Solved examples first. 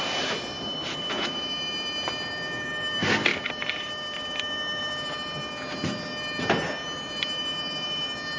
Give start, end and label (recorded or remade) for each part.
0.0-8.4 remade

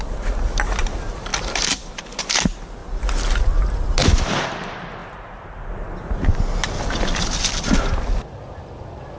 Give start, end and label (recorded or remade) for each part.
0.0-1.3 recorded; 1.3-2.2 remade; 2.2-9.2 recorded

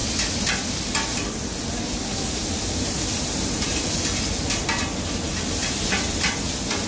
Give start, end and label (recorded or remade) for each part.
0.0-0.5 remade; 0.5-2.4 recorded; 2.4-4.7 remade; 4.7-5.6 recorded; 5.6-6.3 remade; 6.3-6.9 recorded

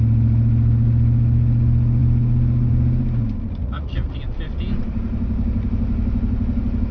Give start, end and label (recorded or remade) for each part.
0.0-3.6 recorded; 3.6-4.2 remade; 4.2-6.9 recorded

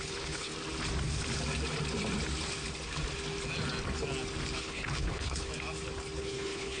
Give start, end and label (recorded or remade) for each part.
0.0-0.5 remade; 0.5-4.6 recorded; 4.6-5.5 remade; 5.5-6.2 recorded; 6.2-6.8 remade

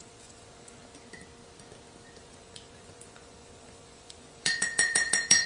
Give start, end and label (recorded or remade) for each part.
0.0-0.8 remade; 0.8-2.2 recorded; 2.2-5.5 remade

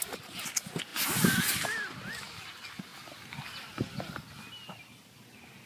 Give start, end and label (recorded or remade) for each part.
0.0-5.7 recorded

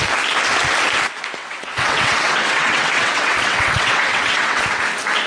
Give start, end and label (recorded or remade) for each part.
0.0-1.4 recorded; 1.4-4.6 remade; 4.6-5.3 recorded